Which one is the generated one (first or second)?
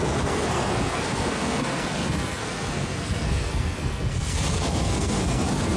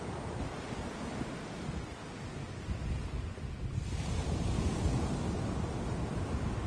first